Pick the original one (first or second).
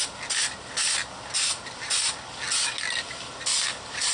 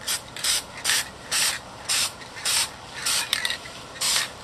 first